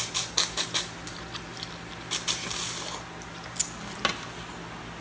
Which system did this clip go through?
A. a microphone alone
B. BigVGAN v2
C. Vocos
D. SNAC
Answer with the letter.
A